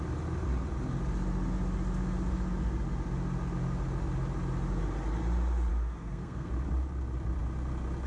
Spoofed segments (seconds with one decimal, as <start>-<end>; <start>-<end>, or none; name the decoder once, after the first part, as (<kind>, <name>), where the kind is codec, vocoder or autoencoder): 5.7-6.5 (codec, SNAC)